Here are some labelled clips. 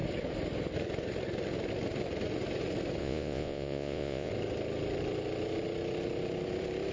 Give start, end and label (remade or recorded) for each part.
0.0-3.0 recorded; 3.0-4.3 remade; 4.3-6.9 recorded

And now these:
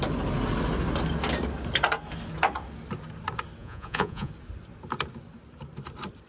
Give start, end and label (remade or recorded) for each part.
0.0-3.6 recorded; 3.6-4.3 remade; 4.3-6.3 recorded

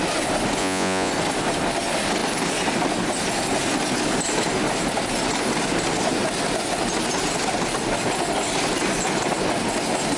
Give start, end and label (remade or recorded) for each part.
0.0-0.6 recorded; 0.6-1.1 remade; 1.1-10.2 recorded

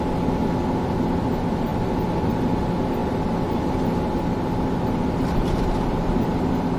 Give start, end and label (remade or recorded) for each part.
0.0-6.8 recorded